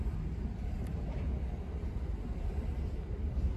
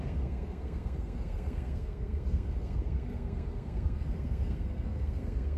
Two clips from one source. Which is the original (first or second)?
first